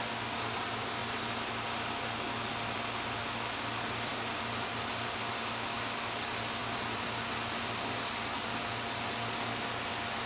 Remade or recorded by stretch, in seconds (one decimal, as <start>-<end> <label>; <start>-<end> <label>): 0.0-10.3 recorded

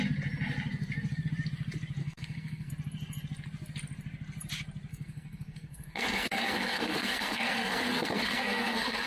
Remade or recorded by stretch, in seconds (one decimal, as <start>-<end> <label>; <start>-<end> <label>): 0.0-2.0 recorded; 2.0-2.7 remade; 2.7-4.9 recorded; 4.9-9.1 remade